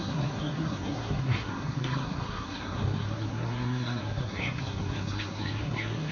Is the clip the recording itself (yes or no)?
no